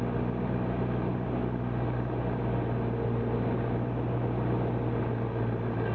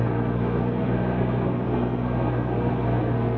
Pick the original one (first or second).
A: first